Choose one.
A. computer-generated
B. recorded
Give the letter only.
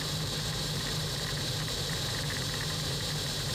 A